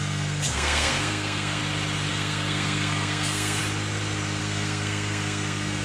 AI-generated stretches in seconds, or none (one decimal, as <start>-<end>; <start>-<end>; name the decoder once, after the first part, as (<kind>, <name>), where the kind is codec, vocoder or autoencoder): 0.0-1.6 (codec, SNAC); 2.1-3.6; 4.4-5.8